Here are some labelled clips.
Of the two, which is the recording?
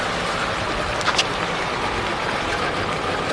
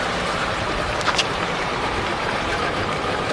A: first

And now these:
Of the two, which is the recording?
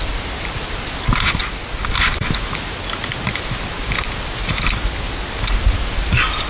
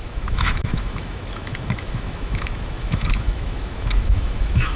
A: first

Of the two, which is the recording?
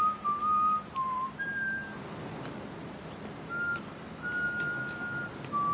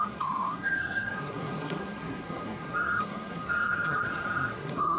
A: first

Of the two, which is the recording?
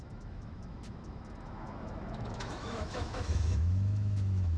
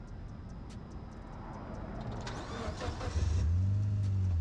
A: second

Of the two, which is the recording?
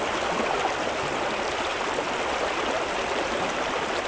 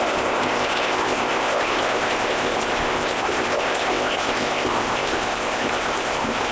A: first